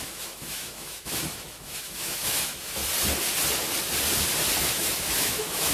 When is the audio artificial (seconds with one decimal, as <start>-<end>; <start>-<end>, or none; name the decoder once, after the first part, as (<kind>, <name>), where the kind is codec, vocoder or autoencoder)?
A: 0.0-2.8 (autoencoder, DAC-VAE); 4.6-5.7